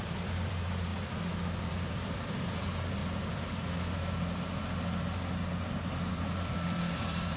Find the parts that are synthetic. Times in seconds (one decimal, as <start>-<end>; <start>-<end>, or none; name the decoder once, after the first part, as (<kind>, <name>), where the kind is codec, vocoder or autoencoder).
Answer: 0.0-0.9 (vocoder, BigVGAN v2); 1.6-3.0; 6.1-7.4